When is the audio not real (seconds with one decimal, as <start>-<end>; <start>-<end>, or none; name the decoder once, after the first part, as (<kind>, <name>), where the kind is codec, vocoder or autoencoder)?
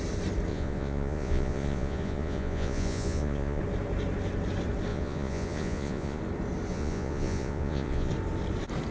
0.5-3.6 (vocoder, Vocos); 4.9-6.2; 6.7-8.1